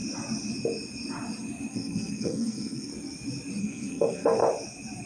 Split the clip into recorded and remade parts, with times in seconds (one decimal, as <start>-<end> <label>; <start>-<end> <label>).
0.0-1.7 recorded; 1.7-2.9 remade; 2.9-3.6 recorded; 3.6-4.4 remade; 4.4-5.1 recorded